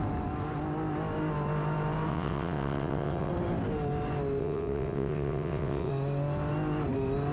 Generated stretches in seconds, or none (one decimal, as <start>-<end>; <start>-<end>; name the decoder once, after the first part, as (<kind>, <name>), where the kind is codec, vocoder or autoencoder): 2.1-3.3 (vocoder, WaveNeXt); 4.4-5.9